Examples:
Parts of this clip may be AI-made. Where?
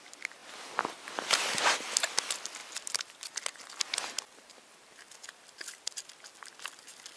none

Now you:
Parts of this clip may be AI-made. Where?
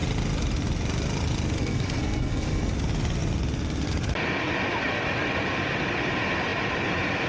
1.6-2.7 (codec, SNAC)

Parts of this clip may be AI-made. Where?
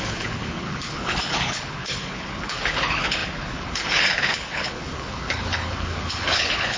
0.0-6.8 (codec, HILCodec)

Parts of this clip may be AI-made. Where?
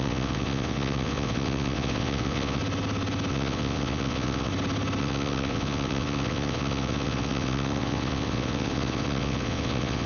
0.0-2.6 (vocoder, WaveNeXt); 3.3-4.5; 5.0-10.1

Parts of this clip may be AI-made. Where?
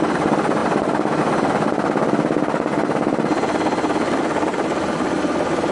none